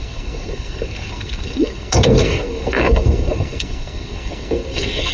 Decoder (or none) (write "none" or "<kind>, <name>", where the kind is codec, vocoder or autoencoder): codec, SNAC